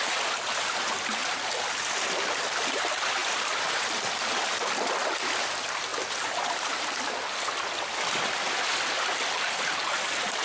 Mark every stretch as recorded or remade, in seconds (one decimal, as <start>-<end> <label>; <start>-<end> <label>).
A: 0.0-3.2 recorded; 3.2-4.2 remade; 4.2-8.7 recorded; 8.7-9.8 remade; 9.8-10.4 recorded